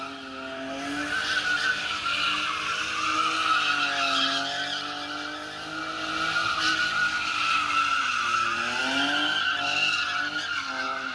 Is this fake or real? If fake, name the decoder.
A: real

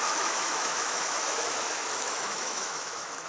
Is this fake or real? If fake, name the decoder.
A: fake, autoencoder, DAC-VAE